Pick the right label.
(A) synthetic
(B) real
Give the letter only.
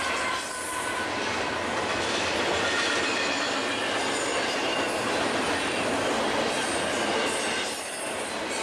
B